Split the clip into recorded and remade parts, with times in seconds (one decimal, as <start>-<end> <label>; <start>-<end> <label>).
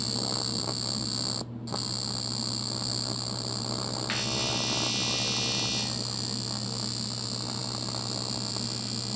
0.0-9.2 recorded